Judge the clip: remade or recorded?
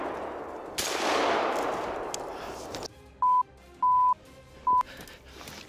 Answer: recorded